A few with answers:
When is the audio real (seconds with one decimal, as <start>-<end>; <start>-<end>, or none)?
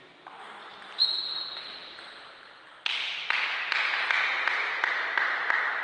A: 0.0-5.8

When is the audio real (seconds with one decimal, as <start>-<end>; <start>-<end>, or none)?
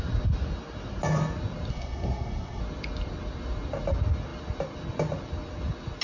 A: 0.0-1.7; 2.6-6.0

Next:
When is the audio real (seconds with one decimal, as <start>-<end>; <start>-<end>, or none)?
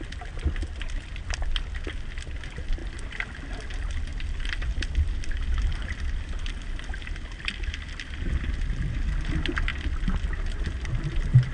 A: 0.0-11.5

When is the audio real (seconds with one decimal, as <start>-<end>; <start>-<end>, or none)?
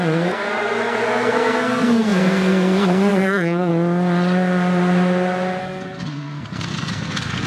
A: 3.7-5.6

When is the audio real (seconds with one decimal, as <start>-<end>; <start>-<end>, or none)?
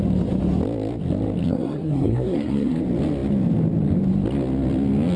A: 0.0-1.4; 2.8-5.2